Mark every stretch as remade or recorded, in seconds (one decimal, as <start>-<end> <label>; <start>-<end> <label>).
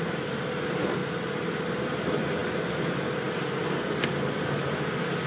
0.0-5.3 recorded